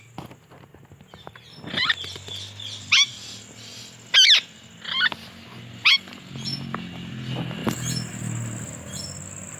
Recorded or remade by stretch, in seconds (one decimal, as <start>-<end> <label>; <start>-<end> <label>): 0.0-9.6 recorded